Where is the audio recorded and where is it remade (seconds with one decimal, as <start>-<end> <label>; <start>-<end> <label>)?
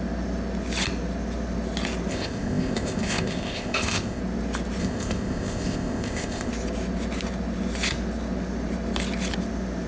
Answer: 0.0-2.1 recorded; 2.1-4.2 remade; 4.2-4.8 recorded; 4.8-6.5 remade; 6.5-9.9 recorded